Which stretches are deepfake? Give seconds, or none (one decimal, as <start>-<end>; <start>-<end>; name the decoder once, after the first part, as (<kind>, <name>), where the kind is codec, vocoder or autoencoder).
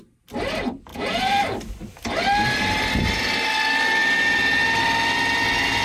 0.9-1.4 (vocoder, Vocos)